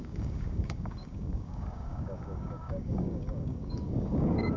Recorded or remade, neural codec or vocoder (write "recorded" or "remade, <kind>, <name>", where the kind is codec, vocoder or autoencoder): remade, codec, DAC